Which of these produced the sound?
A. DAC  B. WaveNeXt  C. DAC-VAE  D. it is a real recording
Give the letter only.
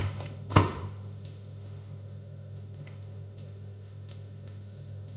C